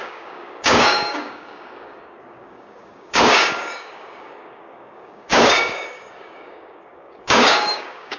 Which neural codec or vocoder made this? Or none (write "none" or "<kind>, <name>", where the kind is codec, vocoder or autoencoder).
codec, DAC